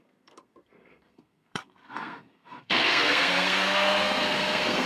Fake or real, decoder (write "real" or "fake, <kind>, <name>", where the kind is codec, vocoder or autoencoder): fake, codec, SNAC